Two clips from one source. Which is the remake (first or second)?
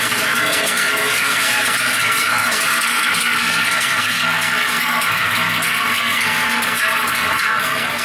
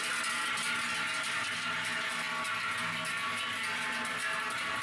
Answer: first